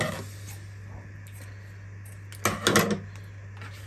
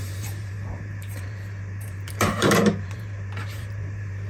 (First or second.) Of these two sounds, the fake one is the second